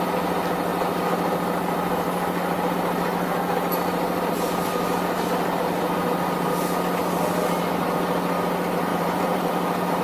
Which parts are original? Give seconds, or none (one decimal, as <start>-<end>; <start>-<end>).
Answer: 0.0-8.9; 9.5-10.0